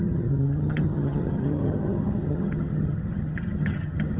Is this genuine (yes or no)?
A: no